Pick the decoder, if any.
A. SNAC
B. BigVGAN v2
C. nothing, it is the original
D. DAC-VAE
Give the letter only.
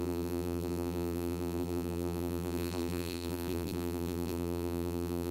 B